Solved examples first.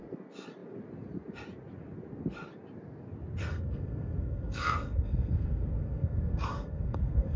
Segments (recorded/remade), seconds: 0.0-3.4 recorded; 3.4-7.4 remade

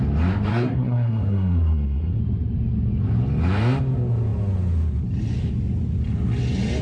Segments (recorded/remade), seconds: 0.0-0.5 recorded; 0.5-2.2 remade; 2.2-6.8 recorded

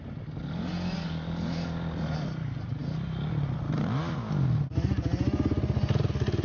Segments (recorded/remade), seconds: 0.0-6.4 recorded

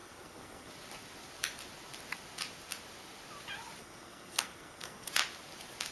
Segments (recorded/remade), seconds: 0.0-0.7 remade; 0.7-3.8 recorded; 3.8-5.1 remade; 5.1-5.9 recorded

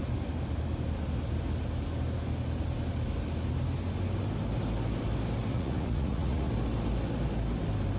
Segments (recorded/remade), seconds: 0.0-5.5 recorded; 5.5-6.5 remade; 6.5-8.0 recorded